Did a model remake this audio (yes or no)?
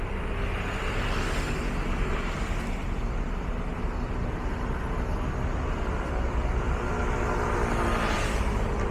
no